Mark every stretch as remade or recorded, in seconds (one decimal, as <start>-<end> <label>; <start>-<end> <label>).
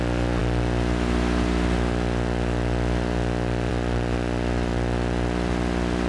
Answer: 0.0-6.1 recorded